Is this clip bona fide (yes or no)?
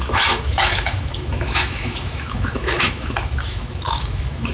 no